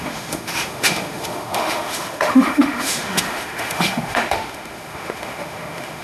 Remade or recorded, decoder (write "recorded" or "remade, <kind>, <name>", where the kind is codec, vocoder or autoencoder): remade, autoencoder, DAC-VAE